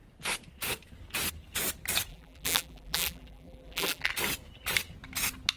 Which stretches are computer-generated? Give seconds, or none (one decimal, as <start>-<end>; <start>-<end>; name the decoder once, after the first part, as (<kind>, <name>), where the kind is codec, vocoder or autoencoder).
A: 2.1-4.1 (vocoder, BigVGAN v2)